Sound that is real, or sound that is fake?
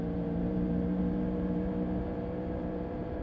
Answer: fake